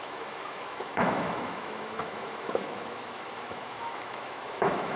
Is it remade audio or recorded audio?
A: remade